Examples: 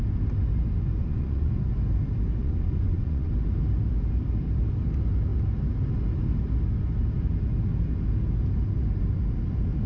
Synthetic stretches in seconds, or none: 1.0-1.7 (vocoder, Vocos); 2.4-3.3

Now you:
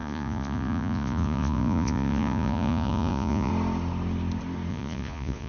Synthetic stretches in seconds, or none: 0.0-3.5 (vocoder, Vocos); 4.7-5.5

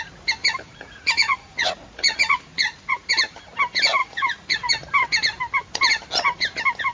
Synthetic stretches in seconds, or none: 0.4-3.1 (vocoder, Vocos); 4.0-4.7